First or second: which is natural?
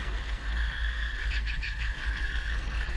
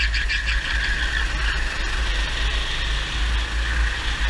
second